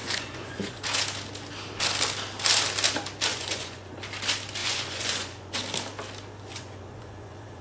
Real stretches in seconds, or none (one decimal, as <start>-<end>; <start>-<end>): 0.8-3.3; 4.0-4.6; 5.6-6.5